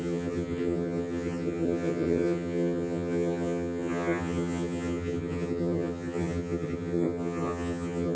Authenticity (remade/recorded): remade